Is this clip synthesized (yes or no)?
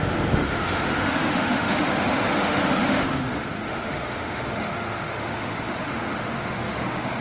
yes